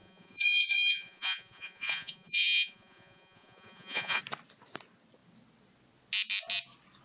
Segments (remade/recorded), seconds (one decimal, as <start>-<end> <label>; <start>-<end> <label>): 0.0-4.2 remade; 4.2-7.0 recorded